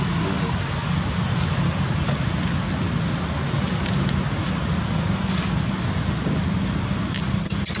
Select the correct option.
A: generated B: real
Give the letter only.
B